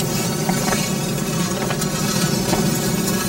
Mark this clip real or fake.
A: fake